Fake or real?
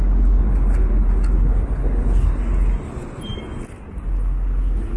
real